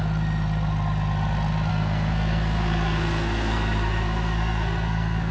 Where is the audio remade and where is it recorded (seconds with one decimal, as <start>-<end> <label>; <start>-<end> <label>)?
0.0-1.7 recorded; 1.7-5.3 remade